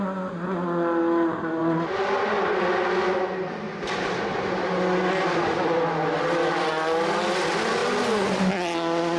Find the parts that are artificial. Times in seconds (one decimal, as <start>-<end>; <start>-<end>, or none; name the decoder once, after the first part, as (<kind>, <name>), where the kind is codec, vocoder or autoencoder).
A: none